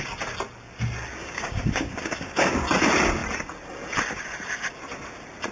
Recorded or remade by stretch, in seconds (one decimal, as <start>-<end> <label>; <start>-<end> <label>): 0.0-1.2 recorded; 1.2-2.5 remade; 2.5-5.5 recorded